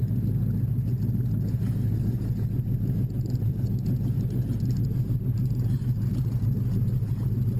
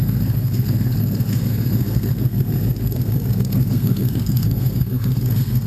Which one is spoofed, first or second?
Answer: second